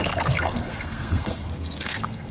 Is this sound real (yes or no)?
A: no